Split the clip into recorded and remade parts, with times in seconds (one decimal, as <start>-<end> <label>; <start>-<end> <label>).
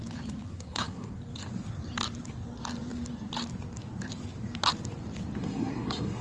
0.0-0.5 recorded; 0.5-1.1 remade; 1.1-5.4 recorded; 5.4-6.2 remade